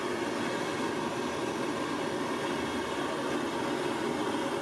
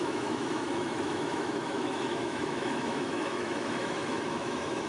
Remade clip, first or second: second